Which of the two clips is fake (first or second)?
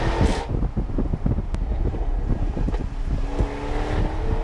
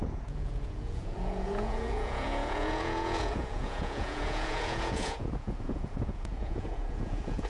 second